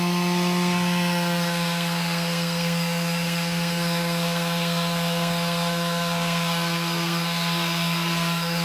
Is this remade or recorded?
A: remade